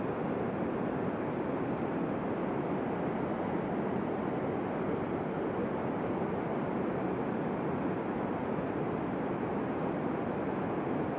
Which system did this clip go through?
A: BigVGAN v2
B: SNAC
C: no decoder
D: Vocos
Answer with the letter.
C